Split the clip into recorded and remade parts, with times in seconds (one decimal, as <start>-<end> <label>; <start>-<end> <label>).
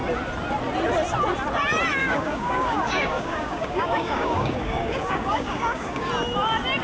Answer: 0.0-2.0 recorded; 2.0-6.1 remade; 6.1-6.8 recorded